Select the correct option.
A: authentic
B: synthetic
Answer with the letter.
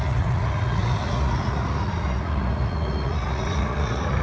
B